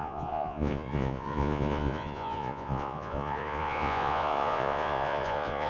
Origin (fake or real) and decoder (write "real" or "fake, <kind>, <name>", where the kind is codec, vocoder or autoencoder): fake, vocoder, Vocos